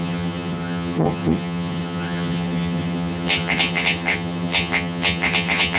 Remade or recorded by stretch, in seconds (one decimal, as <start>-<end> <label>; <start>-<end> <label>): 0.0-5.8 remade